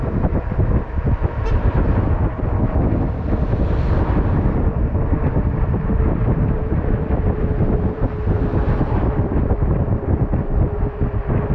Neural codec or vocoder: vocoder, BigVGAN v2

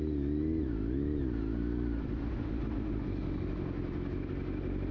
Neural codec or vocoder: none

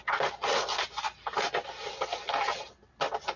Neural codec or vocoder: none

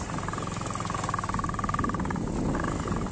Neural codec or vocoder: none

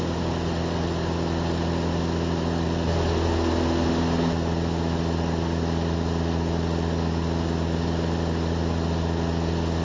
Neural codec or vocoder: none